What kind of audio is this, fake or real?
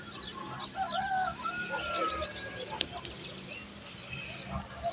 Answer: real